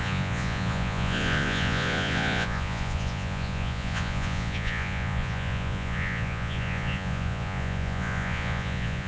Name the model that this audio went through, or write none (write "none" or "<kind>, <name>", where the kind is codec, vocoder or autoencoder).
vocoder, Vocos